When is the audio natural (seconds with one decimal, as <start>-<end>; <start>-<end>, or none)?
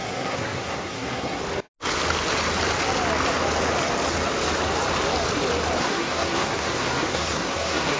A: 1.4-5.8